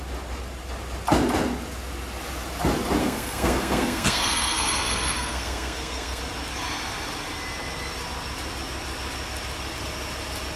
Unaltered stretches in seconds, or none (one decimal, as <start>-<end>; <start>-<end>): 0.0-3.0; 6.2-10.6